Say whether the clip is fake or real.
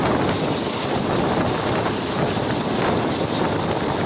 real